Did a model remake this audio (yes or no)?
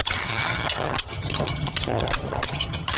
yes